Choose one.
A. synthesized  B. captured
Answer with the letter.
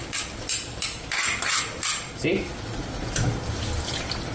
A